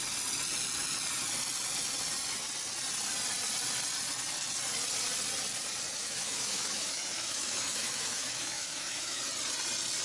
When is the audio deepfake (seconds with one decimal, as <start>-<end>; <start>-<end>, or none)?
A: 6.0-9.2